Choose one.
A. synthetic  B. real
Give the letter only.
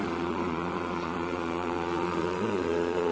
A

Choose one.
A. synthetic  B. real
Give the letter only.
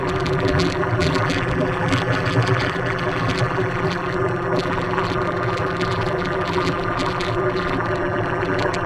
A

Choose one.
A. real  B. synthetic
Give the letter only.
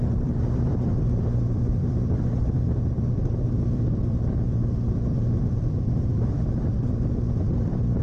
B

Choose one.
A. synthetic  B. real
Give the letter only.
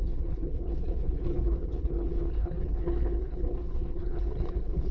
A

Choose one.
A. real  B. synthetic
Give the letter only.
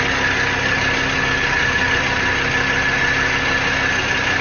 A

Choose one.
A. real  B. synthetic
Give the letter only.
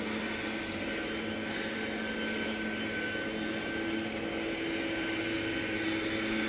A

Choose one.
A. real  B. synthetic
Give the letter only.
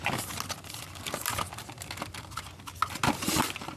A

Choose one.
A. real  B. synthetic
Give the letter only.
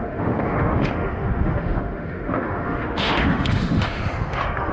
B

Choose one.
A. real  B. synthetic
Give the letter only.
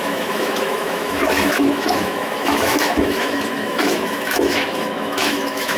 B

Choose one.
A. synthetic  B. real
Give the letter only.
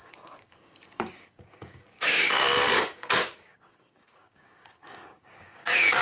A